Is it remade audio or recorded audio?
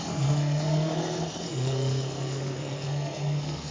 remade